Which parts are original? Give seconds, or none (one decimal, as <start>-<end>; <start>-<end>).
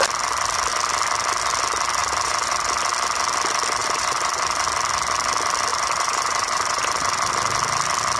0.0-2.0; 2.8-3.8; 4.7-5.7; 7.3-8.2